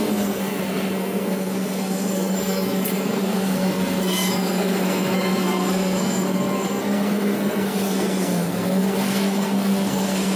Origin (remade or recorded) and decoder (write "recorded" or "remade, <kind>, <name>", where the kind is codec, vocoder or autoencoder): remade, codec, SNAC